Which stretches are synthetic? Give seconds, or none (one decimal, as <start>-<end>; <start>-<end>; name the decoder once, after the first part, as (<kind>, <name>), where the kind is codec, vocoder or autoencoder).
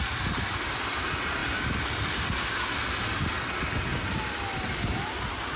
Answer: none